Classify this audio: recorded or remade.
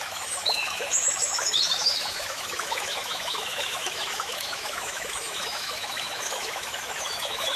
remade